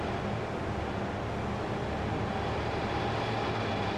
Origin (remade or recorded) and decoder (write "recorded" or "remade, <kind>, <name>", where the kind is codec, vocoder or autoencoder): recorded